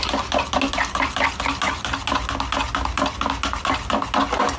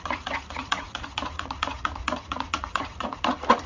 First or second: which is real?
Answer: first